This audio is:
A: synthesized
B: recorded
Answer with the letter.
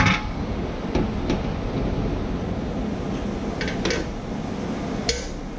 B